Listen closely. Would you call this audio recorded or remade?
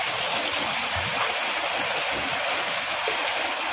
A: recorded